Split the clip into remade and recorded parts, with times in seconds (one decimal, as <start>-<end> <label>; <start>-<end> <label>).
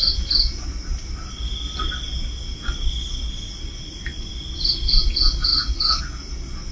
0.0-6.7 recorded